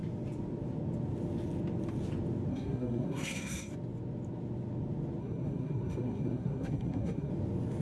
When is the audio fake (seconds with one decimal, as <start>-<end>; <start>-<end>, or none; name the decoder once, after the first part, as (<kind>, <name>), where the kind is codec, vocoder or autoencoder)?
2.5-3.7 (codec, SNAC); 5.2-7.3